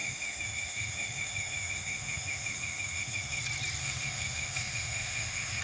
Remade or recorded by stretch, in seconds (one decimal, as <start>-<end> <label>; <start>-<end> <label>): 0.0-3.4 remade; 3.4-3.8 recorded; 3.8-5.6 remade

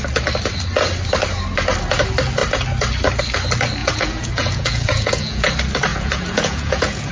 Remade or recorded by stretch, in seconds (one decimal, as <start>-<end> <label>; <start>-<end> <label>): 0.0-3.8 recorded; 3.8-5.5 remade; 5.5-5.9 recorded; 5.9-7.1 remade

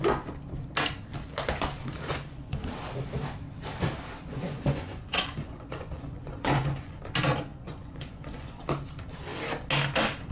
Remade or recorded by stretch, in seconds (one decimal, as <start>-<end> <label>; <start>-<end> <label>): 0.0-2.1 recorded; 2.1-2.7 remade; 2.7-4.3 recorded; 4.3-7.0 remade; 7.0-7.5 recorded; 7.5-8.6 remade; 8.6-10.3 recorded